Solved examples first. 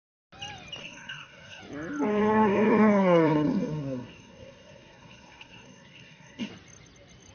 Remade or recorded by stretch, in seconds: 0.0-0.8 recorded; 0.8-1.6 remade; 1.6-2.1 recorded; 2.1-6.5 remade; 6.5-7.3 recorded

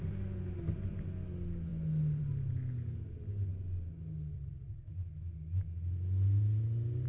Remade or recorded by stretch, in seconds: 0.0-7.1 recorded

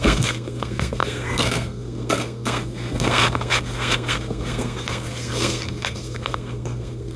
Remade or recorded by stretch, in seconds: 0.0-7.2 remade